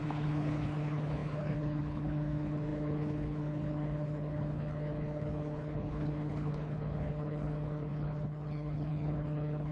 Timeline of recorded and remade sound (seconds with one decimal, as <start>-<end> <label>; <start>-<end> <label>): 0.0-9.7 remade